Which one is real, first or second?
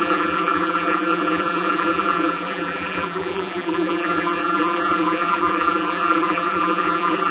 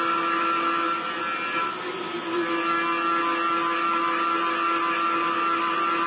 second